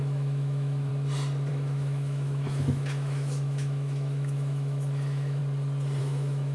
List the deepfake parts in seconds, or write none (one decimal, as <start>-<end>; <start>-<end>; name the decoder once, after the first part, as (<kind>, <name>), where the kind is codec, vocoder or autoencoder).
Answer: 0.0-0.9 (autoencoder, DAC-VAE); 1.5-5.4; 6.0-6.5